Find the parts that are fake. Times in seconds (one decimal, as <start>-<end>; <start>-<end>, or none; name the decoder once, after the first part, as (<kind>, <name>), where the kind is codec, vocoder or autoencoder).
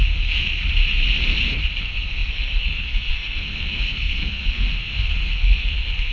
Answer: 0.0-0.6 (codec, SNAC); 1.8-6.1